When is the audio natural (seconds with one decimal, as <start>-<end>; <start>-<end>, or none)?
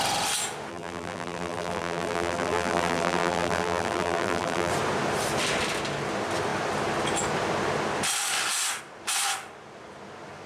0.0-0.7; 4.7-10.5